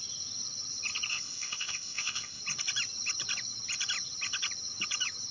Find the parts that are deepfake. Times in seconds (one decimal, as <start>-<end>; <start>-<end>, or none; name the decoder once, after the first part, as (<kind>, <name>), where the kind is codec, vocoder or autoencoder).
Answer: 1.1-2.4 (codec, ZipCodec)